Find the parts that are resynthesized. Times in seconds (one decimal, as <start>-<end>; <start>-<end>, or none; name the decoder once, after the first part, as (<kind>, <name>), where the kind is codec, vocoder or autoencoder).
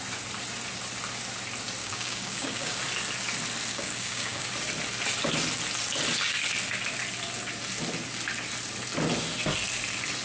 1.8-2.8 (codec, DAC); 3.7-4.5